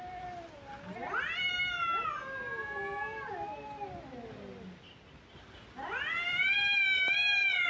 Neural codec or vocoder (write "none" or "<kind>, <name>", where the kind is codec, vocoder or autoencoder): none